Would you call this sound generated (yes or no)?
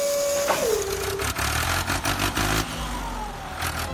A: no